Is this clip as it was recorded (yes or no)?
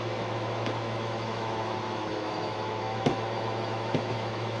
no